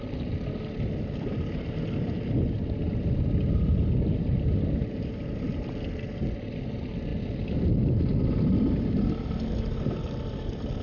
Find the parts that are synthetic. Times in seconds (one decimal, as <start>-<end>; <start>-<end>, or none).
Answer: none